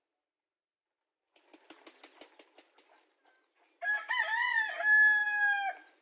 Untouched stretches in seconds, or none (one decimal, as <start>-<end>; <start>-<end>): 0.0-6.0